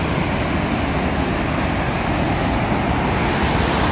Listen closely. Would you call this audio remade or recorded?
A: recorded